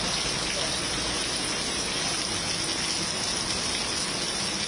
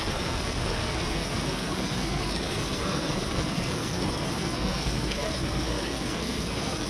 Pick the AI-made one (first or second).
second